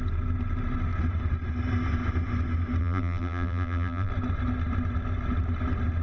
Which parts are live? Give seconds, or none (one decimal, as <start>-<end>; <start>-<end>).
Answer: 0.0-2.8; 4.1-6.0